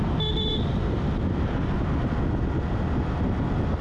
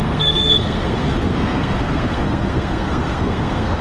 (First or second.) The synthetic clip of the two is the second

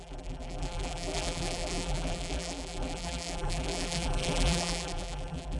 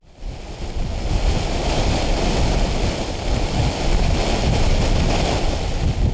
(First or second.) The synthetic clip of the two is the first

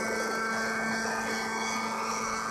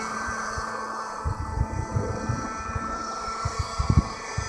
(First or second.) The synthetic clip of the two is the second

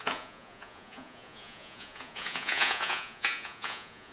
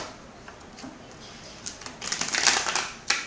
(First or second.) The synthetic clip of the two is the first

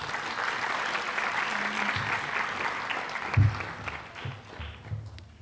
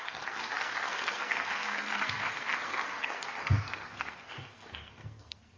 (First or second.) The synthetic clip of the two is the second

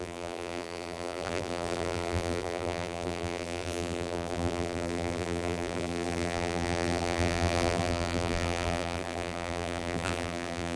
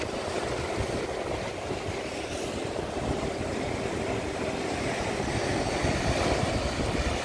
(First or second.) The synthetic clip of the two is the first